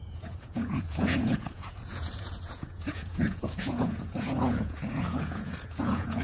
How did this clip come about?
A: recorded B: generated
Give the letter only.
B